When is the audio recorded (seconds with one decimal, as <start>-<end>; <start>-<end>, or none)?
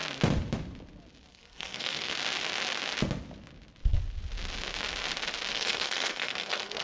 0.0-1.3; 2.1-5.5